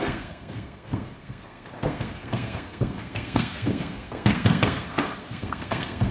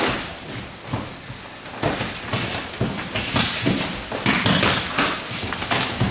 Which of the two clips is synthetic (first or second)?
first